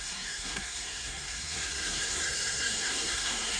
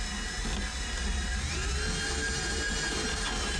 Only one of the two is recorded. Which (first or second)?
second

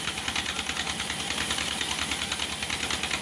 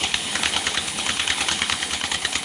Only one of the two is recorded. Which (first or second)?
first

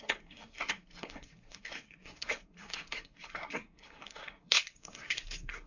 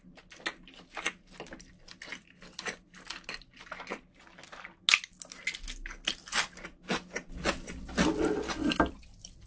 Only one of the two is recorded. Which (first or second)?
second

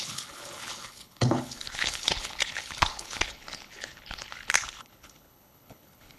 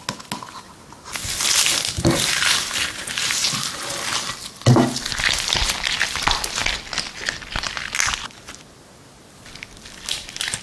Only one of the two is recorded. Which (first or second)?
second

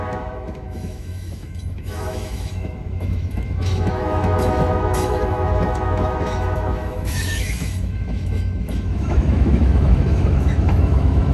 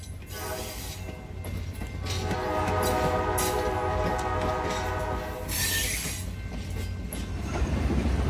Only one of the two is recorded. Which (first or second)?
second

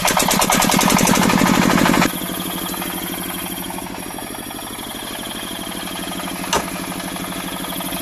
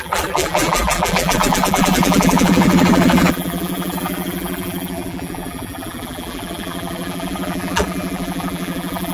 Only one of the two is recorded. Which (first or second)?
first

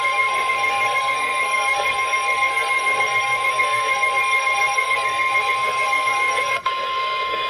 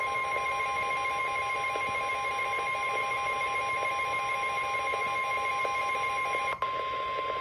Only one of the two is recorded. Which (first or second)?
second